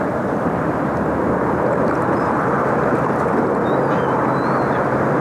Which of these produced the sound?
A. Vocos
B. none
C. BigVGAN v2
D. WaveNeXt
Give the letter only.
C